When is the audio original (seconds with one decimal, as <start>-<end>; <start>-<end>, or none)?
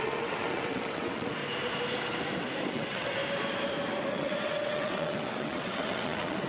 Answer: 1.4-2.7; 3.2-4.1